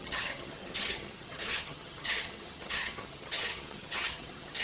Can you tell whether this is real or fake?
fake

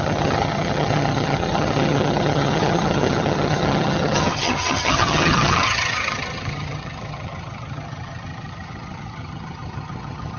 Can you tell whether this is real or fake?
fake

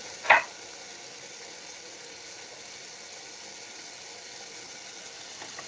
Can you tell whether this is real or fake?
real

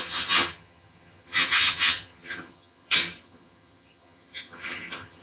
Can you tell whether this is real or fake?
fake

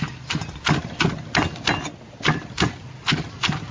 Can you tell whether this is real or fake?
real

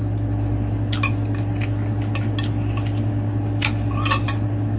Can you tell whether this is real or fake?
real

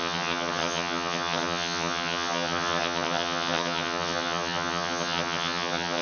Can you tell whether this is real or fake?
fake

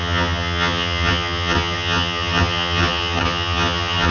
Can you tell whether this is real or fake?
fake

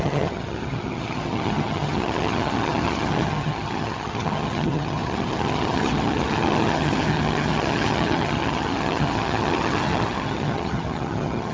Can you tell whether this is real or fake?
fake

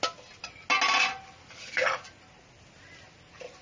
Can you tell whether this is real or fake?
real